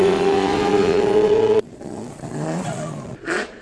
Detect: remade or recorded remade